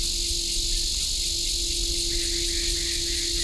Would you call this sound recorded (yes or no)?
yes